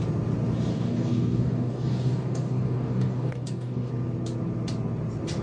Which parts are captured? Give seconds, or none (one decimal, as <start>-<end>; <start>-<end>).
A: 0.0-0.7; 3.9-5.4